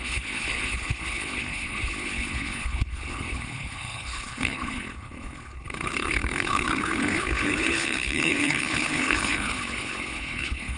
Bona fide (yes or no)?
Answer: no